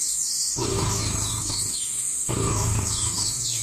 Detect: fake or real fake